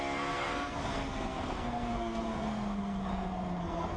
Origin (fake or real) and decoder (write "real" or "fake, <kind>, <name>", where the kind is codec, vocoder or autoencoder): fake, codec, SNAC